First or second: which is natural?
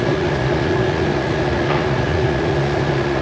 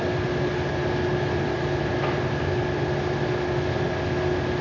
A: second